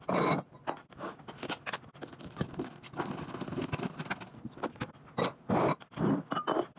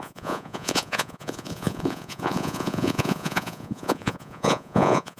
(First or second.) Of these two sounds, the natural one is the first